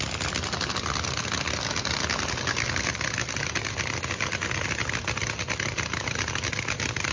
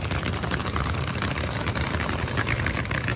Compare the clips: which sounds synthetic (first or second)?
second